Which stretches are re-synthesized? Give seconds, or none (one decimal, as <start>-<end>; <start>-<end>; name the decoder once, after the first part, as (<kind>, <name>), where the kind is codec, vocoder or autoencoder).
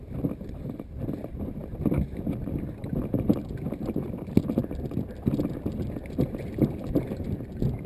none